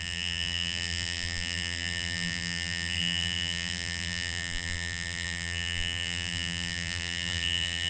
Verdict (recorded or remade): remade